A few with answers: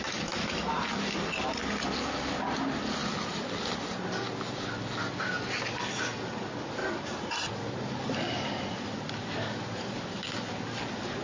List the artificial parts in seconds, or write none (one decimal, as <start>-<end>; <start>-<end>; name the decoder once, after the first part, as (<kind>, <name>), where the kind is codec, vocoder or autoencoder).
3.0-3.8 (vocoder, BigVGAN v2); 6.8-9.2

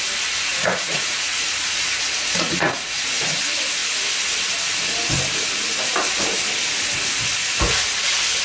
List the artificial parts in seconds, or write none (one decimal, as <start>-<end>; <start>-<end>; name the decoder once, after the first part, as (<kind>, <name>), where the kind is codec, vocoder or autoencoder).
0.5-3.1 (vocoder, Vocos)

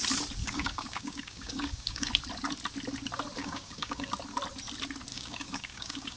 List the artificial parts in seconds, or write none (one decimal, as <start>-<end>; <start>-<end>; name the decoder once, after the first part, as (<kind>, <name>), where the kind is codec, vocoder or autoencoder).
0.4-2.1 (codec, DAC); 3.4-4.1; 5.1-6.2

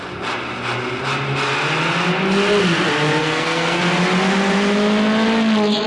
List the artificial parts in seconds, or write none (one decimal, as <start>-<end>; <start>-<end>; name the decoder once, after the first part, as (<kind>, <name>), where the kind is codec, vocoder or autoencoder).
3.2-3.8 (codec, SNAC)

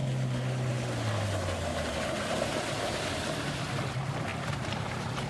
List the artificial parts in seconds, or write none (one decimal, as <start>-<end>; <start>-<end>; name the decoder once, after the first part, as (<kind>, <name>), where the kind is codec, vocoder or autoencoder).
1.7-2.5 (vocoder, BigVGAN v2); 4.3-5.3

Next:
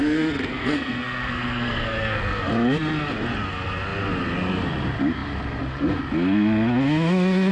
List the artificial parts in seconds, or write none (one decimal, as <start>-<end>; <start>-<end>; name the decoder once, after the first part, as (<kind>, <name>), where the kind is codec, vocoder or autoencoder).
0.0-2.5 (codec, SNAC)

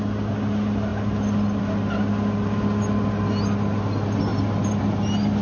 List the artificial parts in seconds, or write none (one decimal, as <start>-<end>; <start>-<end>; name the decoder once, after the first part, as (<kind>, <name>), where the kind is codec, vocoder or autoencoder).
none